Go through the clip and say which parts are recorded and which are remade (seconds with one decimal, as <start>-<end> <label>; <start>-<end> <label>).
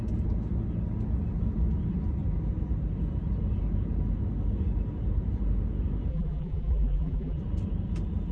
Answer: 0.0-6.1 recorded; 6.1-7.4 remade; 7.4-8.3 recorded